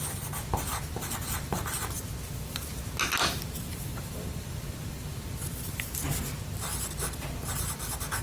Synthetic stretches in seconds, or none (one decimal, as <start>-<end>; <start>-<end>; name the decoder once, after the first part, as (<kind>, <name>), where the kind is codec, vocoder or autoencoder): 0.7-2.0 (vocoder, BigVGAN v2); 3.7-5.3